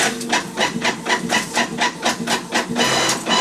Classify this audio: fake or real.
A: real